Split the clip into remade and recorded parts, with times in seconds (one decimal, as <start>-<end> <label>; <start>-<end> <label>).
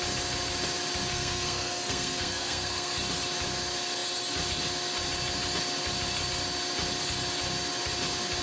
0.0-1.1 recorded; 1.1-3.0 remade; 3.0-8.4 recorded